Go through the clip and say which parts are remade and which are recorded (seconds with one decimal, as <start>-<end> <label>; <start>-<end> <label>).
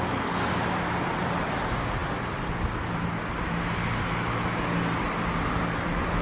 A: 0.0-6.2 recorded